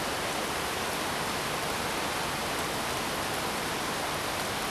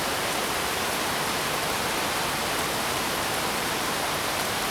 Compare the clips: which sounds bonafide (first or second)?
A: first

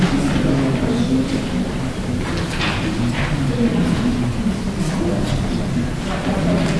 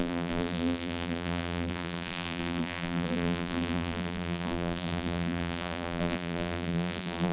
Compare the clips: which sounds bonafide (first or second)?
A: first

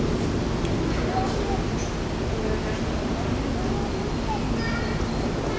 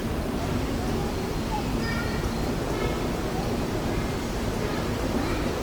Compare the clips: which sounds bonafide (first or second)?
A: first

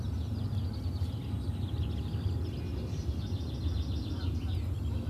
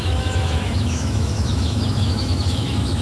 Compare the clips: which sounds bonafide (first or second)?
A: first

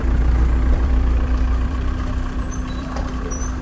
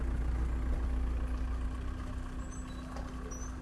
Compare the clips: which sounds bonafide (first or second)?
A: second